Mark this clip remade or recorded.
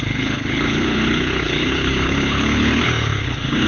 remade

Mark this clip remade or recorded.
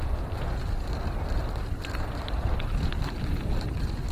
remade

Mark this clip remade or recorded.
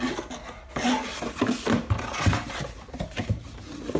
recorded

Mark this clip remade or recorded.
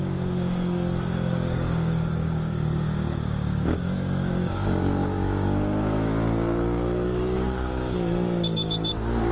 remade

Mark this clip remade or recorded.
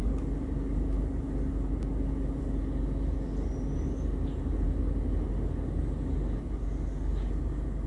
recorded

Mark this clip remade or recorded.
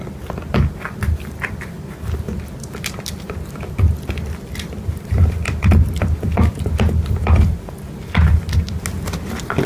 recorded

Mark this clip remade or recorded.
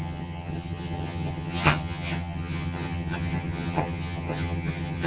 remade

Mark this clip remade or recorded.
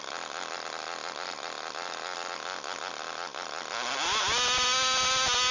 recorded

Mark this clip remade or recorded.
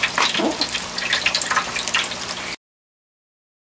recorded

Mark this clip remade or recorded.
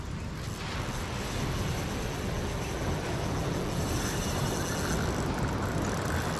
recorded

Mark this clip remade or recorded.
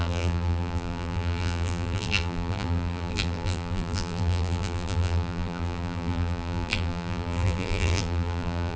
remade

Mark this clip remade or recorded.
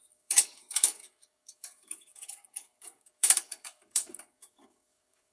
remade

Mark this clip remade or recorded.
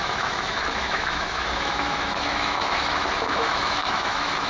remade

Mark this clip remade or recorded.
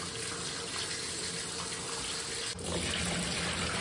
recorded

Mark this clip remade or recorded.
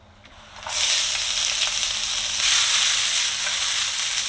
recorded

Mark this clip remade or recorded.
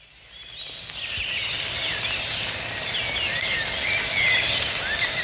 recorded